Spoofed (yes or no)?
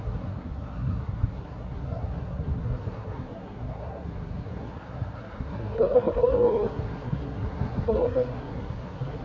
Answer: yes